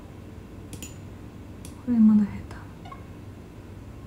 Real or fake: real